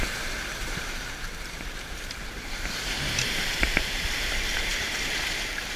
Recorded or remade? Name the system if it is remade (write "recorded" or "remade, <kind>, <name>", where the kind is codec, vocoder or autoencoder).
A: remade, vocoder, BigVGAN v2